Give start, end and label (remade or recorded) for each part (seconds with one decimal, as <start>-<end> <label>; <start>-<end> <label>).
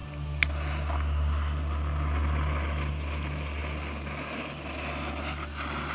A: 0.0-5.9 recorded